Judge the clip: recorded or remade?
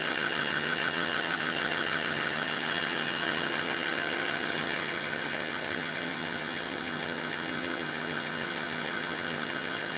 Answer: remade